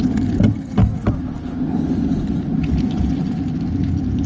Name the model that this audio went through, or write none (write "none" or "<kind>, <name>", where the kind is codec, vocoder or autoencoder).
none